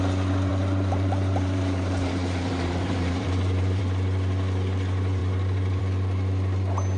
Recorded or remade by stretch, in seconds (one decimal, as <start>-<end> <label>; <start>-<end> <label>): 0.0-0.5 recorded; 0.5-3.8 remade; 3.8-5.2 recorded; 5.2-5.8 remade; 5.8-7.0 recorded